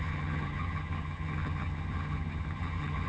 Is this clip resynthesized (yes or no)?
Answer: yes